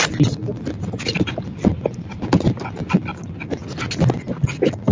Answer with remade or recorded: recorded